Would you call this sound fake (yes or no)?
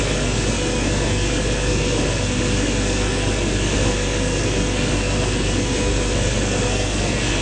yes